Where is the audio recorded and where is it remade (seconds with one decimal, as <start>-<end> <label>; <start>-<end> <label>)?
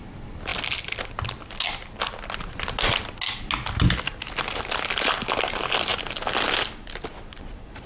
0.0-7.9 recorded